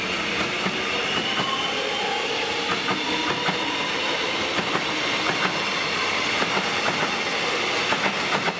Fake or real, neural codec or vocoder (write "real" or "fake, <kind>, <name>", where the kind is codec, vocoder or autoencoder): real